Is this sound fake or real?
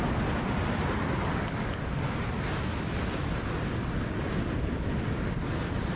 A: real